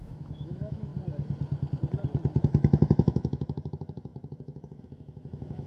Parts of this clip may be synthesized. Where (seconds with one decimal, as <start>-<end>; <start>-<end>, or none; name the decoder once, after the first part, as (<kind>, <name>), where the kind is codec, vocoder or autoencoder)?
0.0-0.9 (autoencoder, DAC-VAE); 2.4-5.7